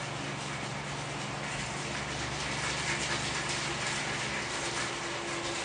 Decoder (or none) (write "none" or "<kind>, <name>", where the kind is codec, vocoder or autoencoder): none